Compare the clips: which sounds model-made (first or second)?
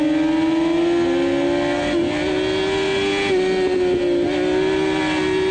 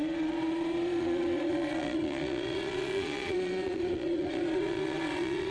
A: second